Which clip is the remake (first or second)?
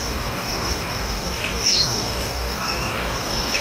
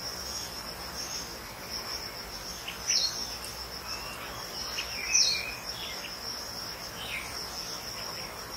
first